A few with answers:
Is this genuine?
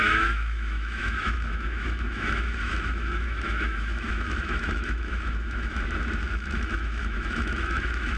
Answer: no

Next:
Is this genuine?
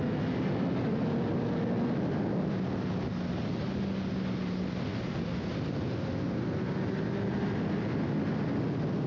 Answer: yes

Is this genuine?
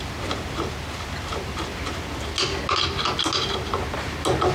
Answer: yes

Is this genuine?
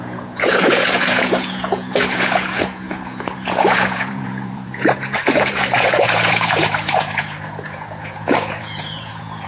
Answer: no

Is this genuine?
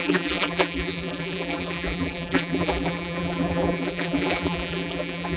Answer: no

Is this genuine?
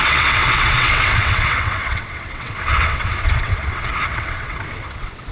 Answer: no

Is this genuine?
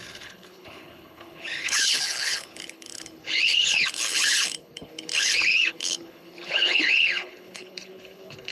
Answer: no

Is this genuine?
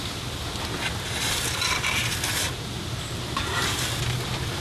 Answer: yes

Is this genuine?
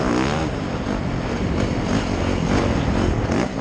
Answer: yes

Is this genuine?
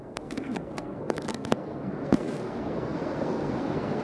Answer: no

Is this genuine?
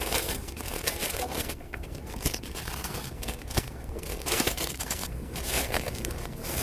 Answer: no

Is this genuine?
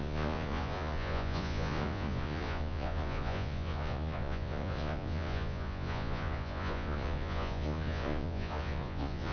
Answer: no